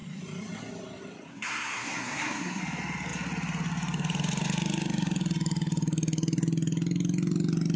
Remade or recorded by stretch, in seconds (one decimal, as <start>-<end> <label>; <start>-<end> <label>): 0.0-1.3 recorded; 1.3-2.6 remade; 2.6-7.8 recorded